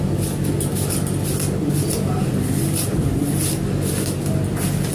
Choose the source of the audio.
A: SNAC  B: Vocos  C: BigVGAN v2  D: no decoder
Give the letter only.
D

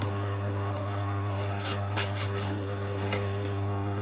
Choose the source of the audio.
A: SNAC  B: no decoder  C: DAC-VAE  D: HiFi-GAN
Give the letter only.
A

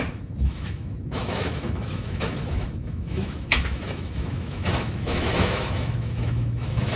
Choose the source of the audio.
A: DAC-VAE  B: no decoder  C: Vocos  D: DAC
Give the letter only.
A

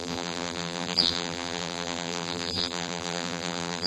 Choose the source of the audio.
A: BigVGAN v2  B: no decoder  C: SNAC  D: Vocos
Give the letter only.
A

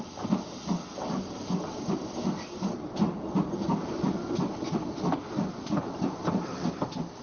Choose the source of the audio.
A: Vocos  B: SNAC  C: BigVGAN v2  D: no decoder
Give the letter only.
D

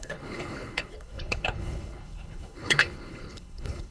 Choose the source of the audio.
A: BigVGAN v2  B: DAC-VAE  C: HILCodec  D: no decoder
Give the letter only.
C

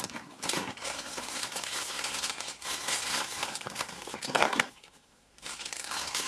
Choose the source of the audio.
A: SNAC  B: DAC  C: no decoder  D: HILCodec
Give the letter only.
A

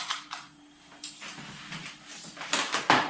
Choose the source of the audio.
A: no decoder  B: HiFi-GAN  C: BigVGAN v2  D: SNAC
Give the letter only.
C